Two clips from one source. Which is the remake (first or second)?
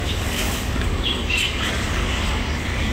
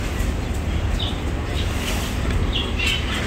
first